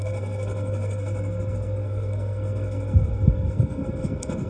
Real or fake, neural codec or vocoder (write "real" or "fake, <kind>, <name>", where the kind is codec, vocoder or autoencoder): fake, codec, SNAC